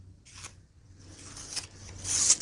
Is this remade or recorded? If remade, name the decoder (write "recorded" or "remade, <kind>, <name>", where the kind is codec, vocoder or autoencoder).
recorded